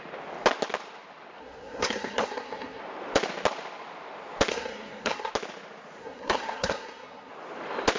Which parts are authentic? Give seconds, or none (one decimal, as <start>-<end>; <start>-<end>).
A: 0.0-1.4; 2.8-4.5; 5.3-6.0; 7.3-8.0